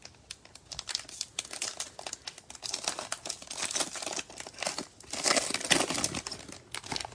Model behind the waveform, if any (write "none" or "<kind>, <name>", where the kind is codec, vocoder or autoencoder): none